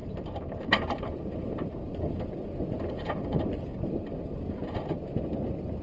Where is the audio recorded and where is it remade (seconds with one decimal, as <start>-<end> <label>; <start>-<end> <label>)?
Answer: 0.0-5.8 recorded

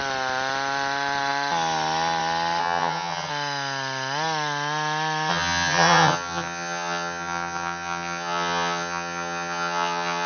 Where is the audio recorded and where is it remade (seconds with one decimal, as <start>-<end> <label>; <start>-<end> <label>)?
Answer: 0.0-2.6 recorded; 2.6-3.3 remade; 3.3-5.3 recorded; 5.3-10.3 remade

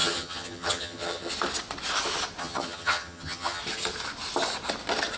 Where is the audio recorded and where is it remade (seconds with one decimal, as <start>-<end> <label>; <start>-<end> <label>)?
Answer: 0.0-1.3 remade; 1.3-2.4 recorded; 2.4-3.6 remade; 3.6-5.2 recorded